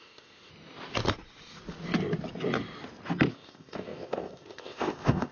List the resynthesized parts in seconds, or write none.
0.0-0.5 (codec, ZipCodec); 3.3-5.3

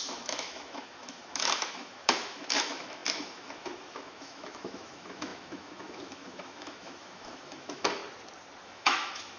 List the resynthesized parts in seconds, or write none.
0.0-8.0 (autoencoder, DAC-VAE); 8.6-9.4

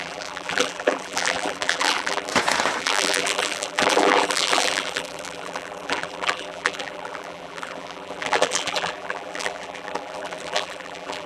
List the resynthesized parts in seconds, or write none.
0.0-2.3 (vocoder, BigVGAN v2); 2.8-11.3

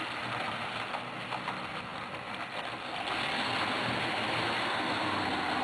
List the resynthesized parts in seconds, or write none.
none